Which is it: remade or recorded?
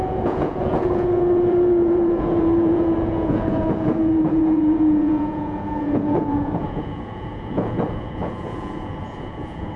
remade